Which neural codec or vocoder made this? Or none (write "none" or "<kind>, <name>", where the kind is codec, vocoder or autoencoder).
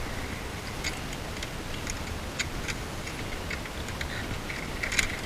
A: none